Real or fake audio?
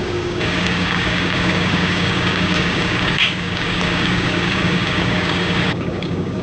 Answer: fake